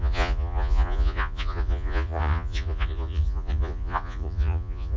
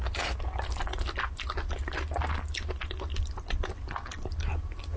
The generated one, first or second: first